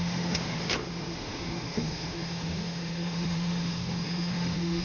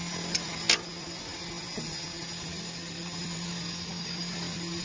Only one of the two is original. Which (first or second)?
second